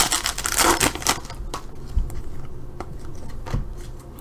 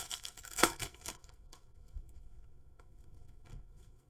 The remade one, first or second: second